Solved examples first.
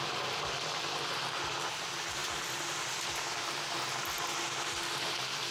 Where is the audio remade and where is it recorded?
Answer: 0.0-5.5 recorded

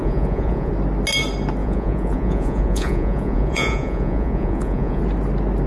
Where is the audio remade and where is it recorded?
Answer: 0.0-0.7 remade; 0.7-1.6 recorded; 1.6-5.0 remade; 5.0-5.7 recorded

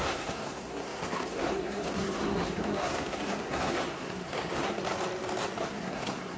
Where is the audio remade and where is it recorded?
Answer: 0.0-4.8 remade; 4.8-5.6 recorded; 5.6-6.4 remade

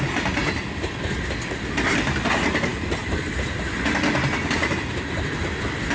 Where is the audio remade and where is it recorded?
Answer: 0.0-5.9 recorded

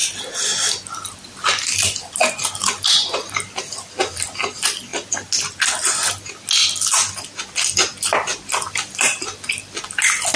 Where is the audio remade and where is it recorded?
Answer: 0.0-8.3 recorded; 8.3-9.8 remade; 9.8-10.4 recorded

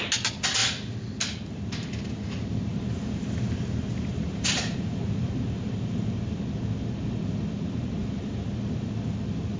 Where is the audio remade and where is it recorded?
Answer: 0.0-2.7 recorded; 2.7-6.2 remade; 6.2-8.0 recorded; 8.0-8.5 remade; 8.5-9.6 recorded

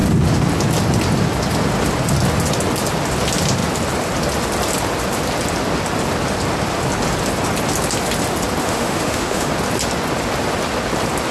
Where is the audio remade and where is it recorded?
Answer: 0.0-8.6 recorded; 8.6-9.5 remade; 9.5-11.3 recorded

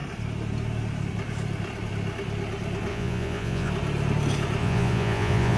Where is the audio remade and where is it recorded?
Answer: 0.0-2.9 recorded; 2.9-3.7 remade; 3.7-4.6 recorded; 4.6-5.6 remade